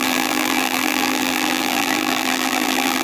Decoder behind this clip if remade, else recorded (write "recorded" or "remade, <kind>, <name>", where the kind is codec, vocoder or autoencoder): remade, vocoder, BigVGAN v2